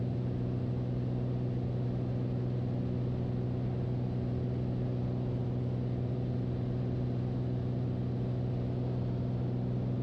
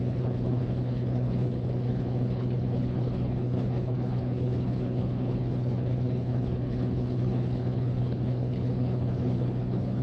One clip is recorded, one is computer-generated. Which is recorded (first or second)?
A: first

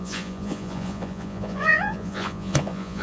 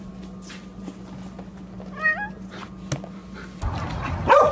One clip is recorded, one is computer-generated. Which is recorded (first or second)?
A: second